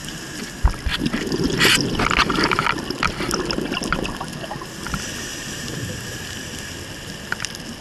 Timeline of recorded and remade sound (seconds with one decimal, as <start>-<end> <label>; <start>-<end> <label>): 0.0-0.5 remade; 0.5-0.9 recorded; 0.9-1.7 remade; 1.7-5.3 recorded; 5.3-6.2 remade; 6.2-7.8 recorded